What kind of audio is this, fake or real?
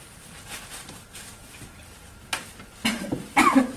fake